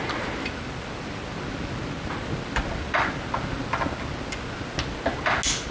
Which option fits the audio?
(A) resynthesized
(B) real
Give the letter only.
B